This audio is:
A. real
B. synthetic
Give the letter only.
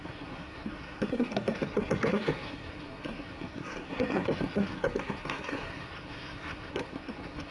B